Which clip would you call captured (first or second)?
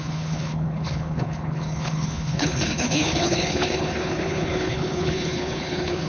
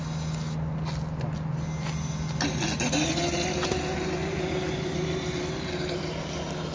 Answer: second